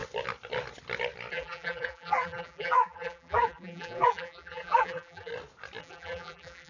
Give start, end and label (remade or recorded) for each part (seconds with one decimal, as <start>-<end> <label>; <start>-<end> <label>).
0.0-1.3 recorded; 1.3-5.3 remade; 5.3-5.8 recorded; 5.8-6.7 remade